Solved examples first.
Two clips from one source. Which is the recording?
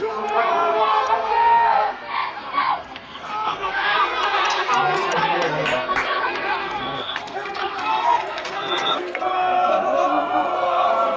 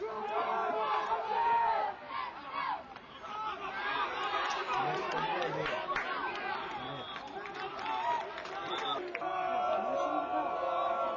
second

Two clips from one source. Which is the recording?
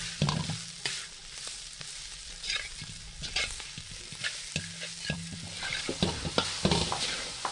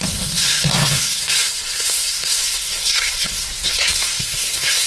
first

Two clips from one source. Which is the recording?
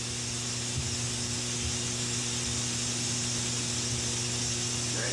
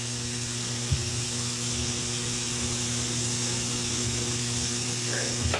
first